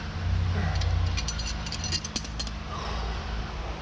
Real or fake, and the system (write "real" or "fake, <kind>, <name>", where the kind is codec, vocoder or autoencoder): real